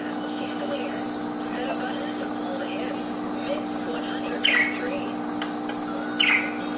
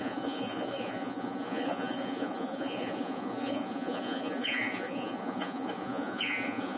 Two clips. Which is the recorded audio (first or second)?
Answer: first